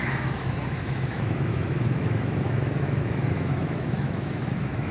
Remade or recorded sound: remade